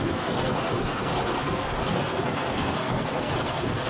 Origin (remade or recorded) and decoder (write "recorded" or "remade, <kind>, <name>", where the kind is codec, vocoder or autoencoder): remade, codec, SNAC